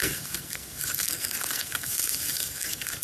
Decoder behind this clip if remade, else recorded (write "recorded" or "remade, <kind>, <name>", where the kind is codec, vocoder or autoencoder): remade, codec, SNAC